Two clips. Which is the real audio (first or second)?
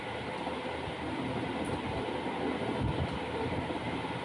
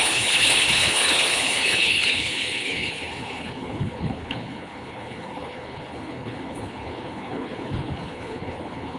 first